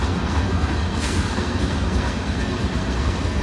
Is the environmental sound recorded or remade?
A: remade